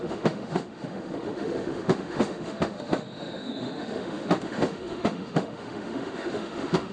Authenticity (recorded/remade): remade